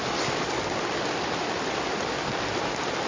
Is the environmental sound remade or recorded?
recorded